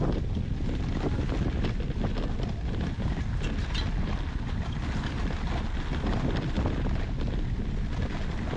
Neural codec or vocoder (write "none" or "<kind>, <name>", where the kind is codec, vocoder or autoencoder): none